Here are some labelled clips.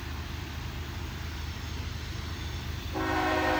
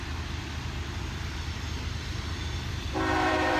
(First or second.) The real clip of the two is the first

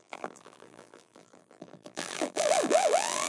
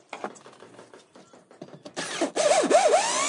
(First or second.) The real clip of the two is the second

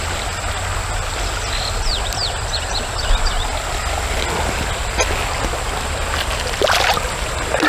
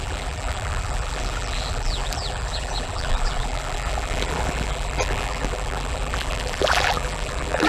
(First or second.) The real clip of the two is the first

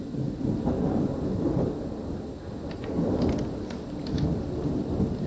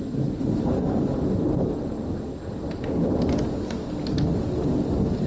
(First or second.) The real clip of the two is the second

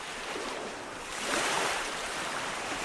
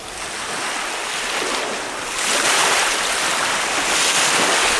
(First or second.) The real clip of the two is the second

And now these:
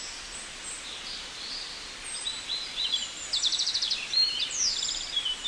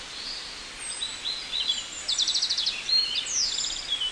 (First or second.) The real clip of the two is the second